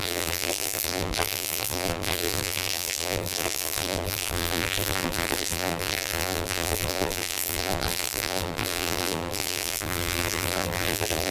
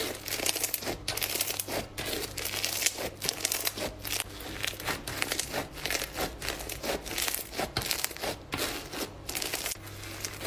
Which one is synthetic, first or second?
first